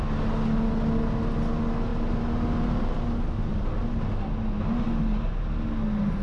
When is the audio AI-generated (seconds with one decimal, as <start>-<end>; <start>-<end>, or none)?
none